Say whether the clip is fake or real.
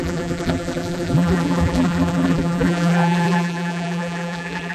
fake